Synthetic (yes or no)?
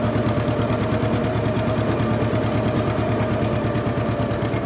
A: no